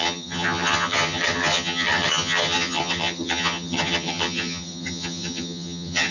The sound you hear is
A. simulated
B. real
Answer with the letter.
A